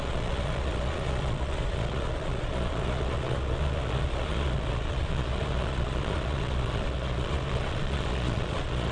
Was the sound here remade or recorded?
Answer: remade